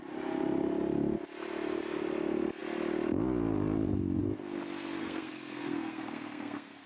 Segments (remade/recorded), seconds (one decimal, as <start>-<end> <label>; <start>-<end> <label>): 0.0-5.0 recorded; 5.0-6.9 remade